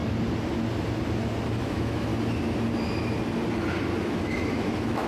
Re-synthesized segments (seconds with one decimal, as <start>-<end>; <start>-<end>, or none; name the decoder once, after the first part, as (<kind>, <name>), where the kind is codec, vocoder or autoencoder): 1.6-2.1 (autoencoder, DAC-VAE); 4.0-5.1